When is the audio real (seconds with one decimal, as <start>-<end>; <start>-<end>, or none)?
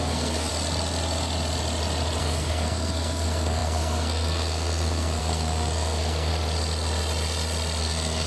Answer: 0.5-2.2; 6.3-7.8